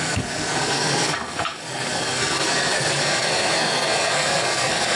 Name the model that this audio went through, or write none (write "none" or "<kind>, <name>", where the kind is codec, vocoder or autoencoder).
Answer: codec, SNAC